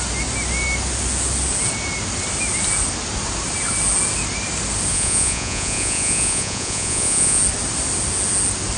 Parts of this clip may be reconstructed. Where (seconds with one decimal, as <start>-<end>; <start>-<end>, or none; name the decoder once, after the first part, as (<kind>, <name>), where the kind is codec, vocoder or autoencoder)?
4.9-7.4 (vocoder, Vocos)